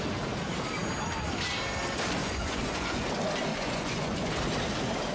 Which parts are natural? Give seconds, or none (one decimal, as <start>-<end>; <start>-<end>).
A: 0.0-2.2; 3.0-3.5; 4.3-5.1

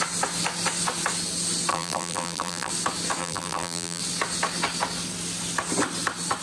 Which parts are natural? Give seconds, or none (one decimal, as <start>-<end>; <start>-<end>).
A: 0.0-1.7; 2.7-3.2; 4.0-6.4

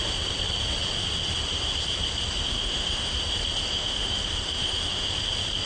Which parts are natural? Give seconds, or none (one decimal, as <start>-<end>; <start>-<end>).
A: 0.0-2.5; 3.2-3.7; 5.1-5.7

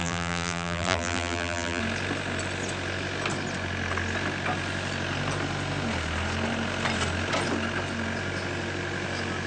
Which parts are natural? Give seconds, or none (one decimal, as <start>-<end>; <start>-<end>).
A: 1.8-9.5

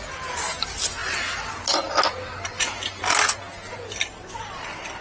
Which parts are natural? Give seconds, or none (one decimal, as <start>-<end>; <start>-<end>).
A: 0.0-5.0